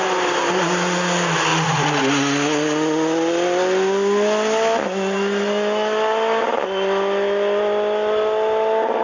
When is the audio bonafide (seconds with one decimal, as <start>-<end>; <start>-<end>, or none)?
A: 0.0-1.5; 2.0-9.0